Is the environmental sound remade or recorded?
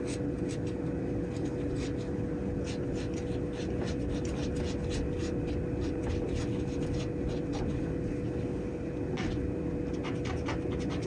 recorded